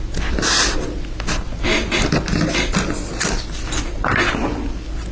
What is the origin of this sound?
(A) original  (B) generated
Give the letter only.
A